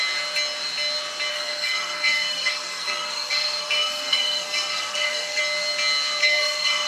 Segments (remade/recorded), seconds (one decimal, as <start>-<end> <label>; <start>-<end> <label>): 0.0-1.3 recorded; 1.3-5.4 remade; 5.4-6.2 recorded; 6.2-6.9 remade